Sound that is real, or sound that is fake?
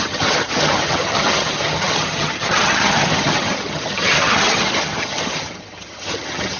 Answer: fake